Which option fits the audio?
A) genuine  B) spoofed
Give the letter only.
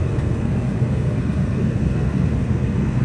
B